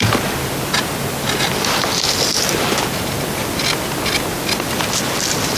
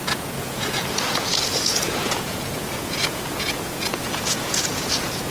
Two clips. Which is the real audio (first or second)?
first